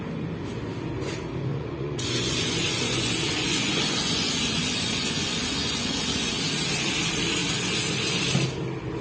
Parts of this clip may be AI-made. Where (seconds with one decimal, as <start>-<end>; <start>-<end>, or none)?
1.5-6.3